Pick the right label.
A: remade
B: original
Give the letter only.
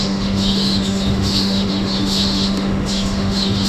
A